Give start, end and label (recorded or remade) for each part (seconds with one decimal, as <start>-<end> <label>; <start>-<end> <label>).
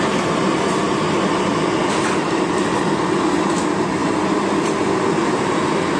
0.0-6.0 recorded